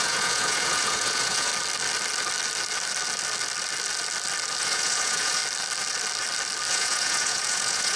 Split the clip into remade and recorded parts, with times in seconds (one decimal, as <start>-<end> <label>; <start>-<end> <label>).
0.0-1.5 remade; 1.5-4.6 recorded; 4.6-5.4 remade; 5.4-6.7 recorded; 6.7-8.0 remade